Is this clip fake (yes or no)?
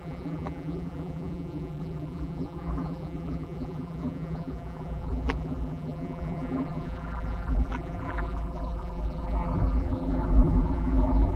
yes